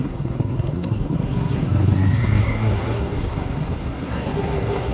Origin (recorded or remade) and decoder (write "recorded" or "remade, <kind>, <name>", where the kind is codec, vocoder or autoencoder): remade, codec, SNAC